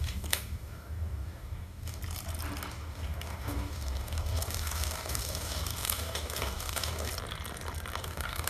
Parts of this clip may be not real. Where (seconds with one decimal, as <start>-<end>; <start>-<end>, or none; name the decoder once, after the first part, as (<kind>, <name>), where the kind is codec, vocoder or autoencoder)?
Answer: 0.0-2.0 (codec, DAC); 2.7-7.1; 8.0-8.5